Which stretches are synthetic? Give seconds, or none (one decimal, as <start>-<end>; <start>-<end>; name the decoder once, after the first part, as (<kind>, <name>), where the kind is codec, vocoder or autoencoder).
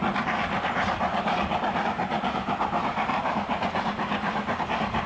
1.1-1.8 (vocoder, BigVGAN v2); 3.1-4.6